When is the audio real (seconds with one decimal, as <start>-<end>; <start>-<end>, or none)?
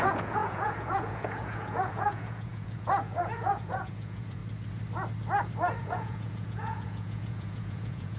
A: 4.4-5.8